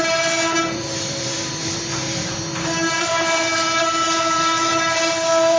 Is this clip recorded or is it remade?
remade